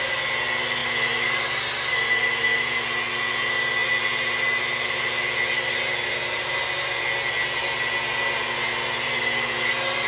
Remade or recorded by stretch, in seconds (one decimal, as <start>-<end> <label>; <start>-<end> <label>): 0.0-10.1 recorded